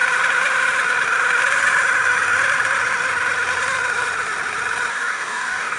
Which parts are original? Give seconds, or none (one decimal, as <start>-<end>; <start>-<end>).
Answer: 0.0-4.9

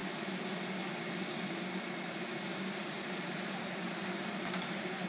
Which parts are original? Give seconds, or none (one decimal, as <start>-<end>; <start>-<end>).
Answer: 0.0-2.5

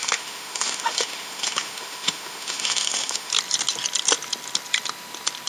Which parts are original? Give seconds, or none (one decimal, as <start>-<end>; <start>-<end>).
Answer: 3.3-5.5

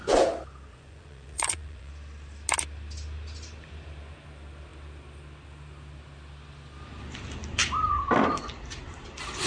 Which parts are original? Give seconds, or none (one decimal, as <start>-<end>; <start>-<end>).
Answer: 0.0-0.7; 1.9-9.5

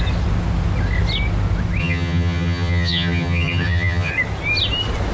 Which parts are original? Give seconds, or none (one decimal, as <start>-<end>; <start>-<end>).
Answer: 0.0-1.8; 4.1-5.1

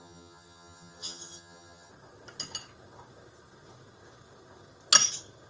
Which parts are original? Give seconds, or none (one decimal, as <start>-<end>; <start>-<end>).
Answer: 1.9-5.5